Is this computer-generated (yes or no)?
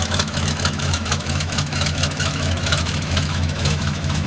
yes